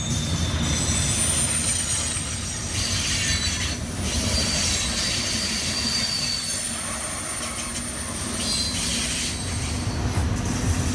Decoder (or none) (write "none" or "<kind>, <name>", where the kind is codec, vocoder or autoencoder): none